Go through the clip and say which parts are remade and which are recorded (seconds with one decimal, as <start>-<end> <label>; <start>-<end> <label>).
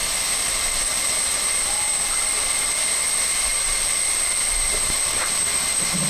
0.0-6.1 recorded